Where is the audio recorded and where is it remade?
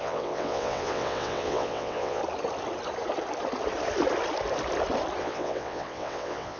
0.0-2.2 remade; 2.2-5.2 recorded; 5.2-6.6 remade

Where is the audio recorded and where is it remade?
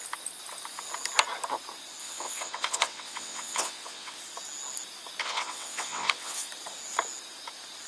0.0-2.0 recorded; 2.0-4.2 remade; 4.2-5.2 recorded; 5.2-6.5 remade; 6.5-7.9 recorded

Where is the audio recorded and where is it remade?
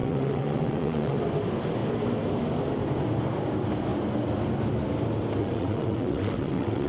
0.0-1.2 remade; 1.2-5.4 recorded; 5.4-6.9 remade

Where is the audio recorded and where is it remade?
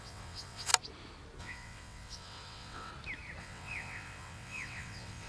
0.0-0.7 remade; 0.7-1.4 recorded; 1.4-2.9 remade; 2.9-3.4 recorded; 3.4-5.3 remade